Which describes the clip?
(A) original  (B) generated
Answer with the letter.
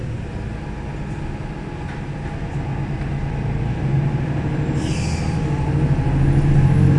A